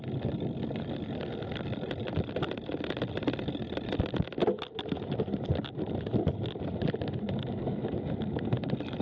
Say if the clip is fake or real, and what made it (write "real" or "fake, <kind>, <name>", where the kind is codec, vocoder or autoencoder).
real